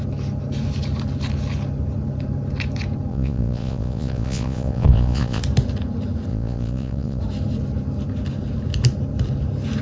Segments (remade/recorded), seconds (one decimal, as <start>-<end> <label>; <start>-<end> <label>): 0.0-3.1 recorded; 3.1-5.4 remade; 5.4-6.3 recorded; 6.3-7.2 remade; 7.2-9.8 recorded